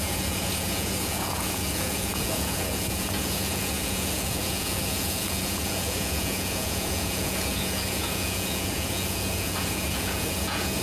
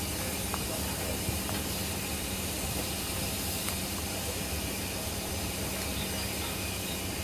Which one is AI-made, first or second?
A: first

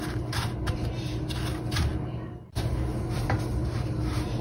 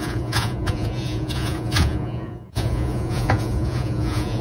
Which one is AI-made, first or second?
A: second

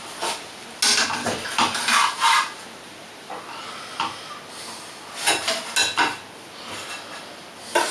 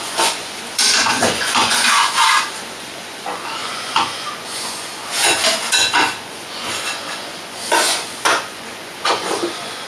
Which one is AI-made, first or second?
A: second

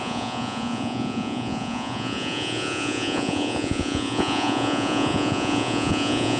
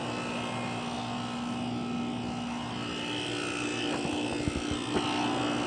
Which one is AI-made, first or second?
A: first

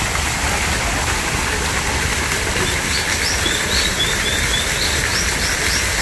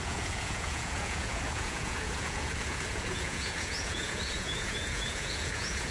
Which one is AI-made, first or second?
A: second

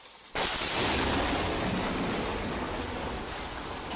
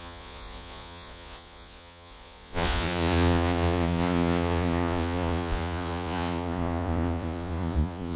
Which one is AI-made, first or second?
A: second